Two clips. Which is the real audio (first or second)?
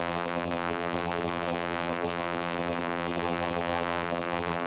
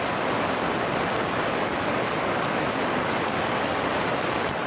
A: second